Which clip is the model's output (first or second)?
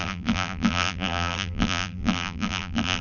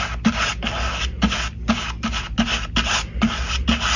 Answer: first